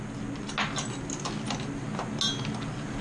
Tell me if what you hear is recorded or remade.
recorded